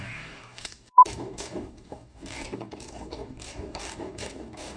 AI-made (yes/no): yes